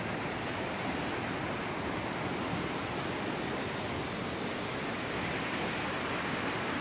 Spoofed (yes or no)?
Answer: no